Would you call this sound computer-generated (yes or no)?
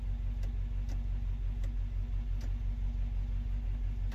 no